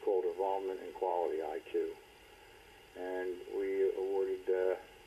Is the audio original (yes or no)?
yes